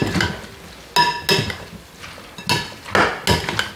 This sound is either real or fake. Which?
real